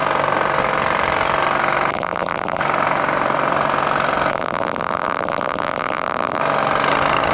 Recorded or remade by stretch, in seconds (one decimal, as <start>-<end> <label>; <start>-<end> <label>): 0.0-1.9 recorded; 1.9-2.6 remade; 2.6-4.3 recorded; 4.3-6.4 remade; 6.4-7.3 recorded